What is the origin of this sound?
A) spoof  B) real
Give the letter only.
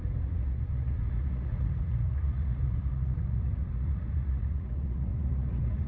A